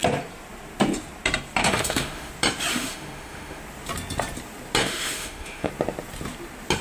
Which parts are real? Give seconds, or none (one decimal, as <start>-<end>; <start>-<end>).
0.0-1.6; 2.3-2.7; 3.6-4.8; 5.7-6.8